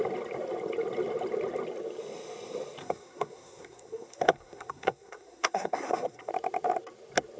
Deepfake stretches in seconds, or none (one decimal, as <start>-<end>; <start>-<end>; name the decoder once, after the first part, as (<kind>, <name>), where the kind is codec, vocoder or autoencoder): 2.8-6.3 (codec, SNAC)